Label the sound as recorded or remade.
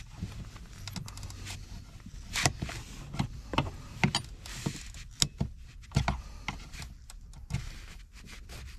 recorded